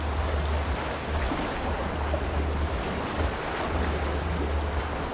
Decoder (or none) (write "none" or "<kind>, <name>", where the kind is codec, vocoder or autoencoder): none